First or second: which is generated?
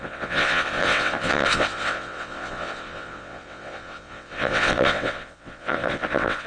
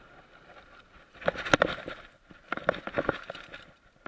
first